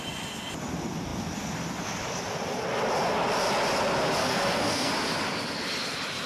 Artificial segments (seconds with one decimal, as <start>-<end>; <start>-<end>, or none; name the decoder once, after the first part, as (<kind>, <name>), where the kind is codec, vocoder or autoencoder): 4.2-4.9 (codec, SNAC)